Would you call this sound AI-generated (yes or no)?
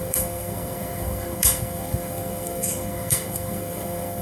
yes